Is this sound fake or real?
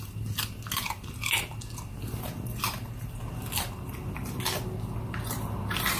real